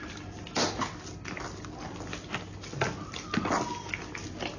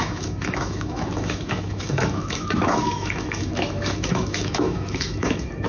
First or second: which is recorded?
first